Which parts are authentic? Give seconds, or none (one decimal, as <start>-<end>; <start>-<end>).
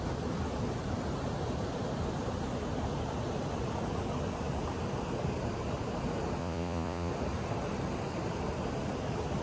0.0-6.4; 7.1-9.4